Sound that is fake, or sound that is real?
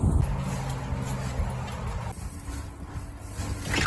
real